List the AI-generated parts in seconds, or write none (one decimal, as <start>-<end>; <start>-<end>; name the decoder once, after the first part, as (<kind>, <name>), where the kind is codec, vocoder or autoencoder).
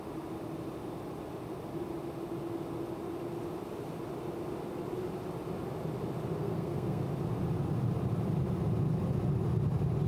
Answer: 6.4-7.0 (codec, SNAC)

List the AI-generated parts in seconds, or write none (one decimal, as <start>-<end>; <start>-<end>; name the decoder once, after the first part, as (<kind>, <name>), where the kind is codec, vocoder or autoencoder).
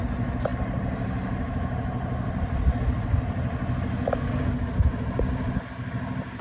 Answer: none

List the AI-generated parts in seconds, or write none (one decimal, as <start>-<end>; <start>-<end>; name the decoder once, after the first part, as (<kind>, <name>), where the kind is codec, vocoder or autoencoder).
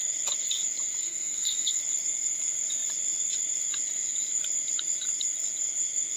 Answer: 1.0-1.8 (codec, SNAC)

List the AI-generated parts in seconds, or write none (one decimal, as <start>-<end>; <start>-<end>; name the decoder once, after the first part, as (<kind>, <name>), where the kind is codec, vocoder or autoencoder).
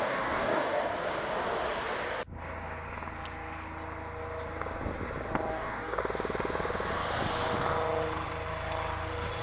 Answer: 0.0-0.8 (codec, DAC); 5.5-6.0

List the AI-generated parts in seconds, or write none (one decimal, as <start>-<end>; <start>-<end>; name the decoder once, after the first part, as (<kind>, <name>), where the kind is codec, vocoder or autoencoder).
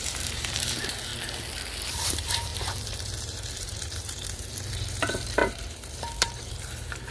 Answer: 0.0-1.1 (vocoder, BigVGAN v2); 1.9-7.1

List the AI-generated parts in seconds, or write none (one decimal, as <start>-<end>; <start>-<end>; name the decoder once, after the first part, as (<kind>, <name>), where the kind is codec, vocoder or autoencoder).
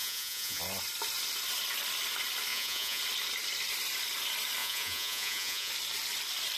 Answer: 0.0-0.6 (vocoder, Vocos); 2.5-3.0; 4.6-5.7